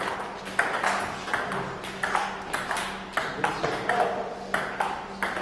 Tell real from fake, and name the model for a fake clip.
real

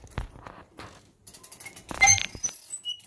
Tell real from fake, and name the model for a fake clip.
real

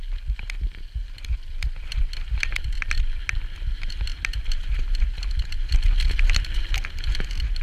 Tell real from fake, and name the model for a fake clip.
real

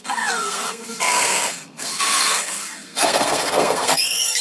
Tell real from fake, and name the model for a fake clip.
fake, codec, SNAC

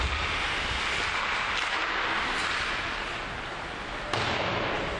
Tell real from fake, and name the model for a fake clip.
real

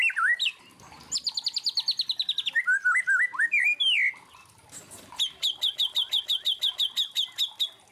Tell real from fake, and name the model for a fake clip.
real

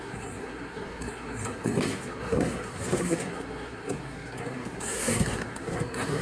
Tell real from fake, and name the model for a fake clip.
fake, codec, SNAC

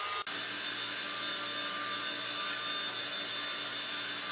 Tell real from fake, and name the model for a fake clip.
real